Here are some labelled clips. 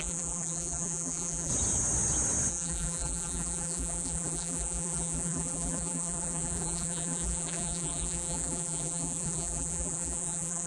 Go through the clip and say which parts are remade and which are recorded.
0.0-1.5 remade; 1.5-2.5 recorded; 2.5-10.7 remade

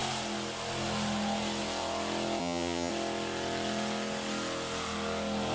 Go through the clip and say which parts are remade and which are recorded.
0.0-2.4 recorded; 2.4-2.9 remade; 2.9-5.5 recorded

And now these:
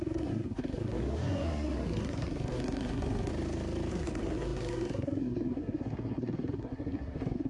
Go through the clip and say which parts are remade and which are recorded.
0.0-3.3 remade; 3.3-3.9 recorded; 3.9-7.5 remade

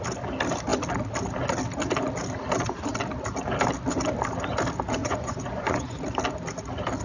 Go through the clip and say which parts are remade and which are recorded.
0.0-5.0 recorded; 5.0-6.0 remade; 6.0-7.0 recorded

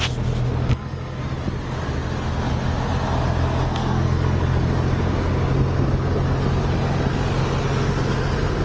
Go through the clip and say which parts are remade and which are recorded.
0.0-0.7 recorded; 0.7-1.2 remade; 1.2-3.7 recorded; 3.7-4.4 remade; 4.4-8.6 recorded

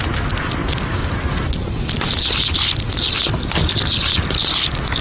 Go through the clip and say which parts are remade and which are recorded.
0.0-5.0 recorded

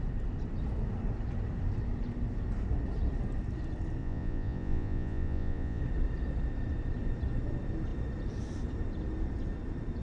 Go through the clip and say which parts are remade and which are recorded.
0.0-4.0 recorded; 4.0-5.8 remade; 5.8-10.0 recorded

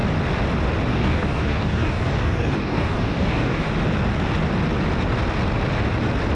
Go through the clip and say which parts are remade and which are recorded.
0.0-0.9 recorded; 0.9-3.7 remade; 3.7-6.3 recorded